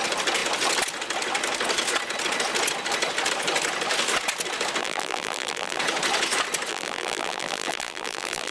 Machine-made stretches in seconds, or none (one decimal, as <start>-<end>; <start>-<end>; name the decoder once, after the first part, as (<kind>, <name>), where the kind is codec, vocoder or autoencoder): 4.8-5.8 (vocoder, BigVGAN v2); 6.7-8.5